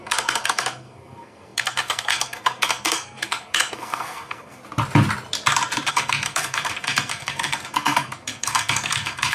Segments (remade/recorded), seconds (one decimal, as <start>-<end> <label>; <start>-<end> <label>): 0.0-4.6 remade; 4.6-5.9 recorded; 5.9-9.3 remade